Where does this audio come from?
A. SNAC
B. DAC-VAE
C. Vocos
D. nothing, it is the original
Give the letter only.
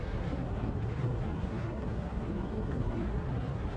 A